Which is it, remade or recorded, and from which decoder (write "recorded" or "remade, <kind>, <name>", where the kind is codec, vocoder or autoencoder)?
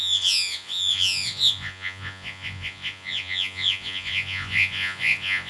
remade, vocoder, Vocos